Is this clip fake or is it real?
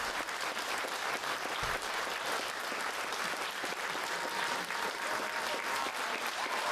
real